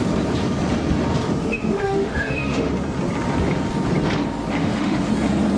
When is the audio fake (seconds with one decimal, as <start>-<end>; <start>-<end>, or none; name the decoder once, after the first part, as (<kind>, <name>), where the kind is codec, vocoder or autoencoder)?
1.4-2.7 (autoencoder, DAC-VAE); 4.6-5.1